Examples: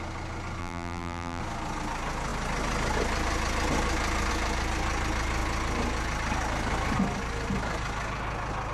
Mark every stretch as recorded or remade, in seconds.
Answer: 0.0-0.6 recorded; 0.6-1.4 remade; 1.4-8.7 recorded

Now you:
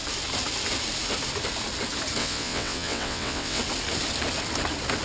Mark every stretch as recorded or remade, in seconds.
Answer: 0.0-2.2 recorded; 2.2-3.6 remade; 3.6-5.0 recorded